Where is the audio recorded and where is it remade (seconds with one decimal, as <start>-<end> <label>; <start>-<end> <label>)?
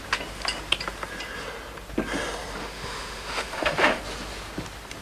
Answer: 0.0-2.6 recorded; 2.6-4.0 remade; 4.0-5.0 recorded